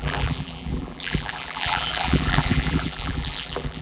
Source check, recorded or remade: remade